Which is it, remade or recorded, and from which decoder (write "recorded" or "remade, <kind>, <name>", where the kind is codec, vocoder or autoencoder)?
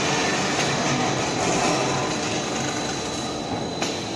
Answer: recorded